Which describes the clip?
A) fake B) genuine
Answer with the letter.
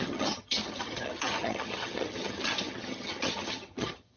A